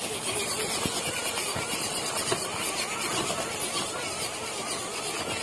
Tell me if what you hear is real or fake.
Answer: real